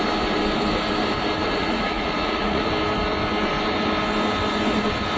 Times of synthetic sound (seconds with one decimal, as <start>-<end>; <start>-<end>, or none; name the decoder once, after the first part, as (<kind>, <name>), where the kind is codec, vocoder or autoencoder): 1.4-2.7 (vocoder, Vocos)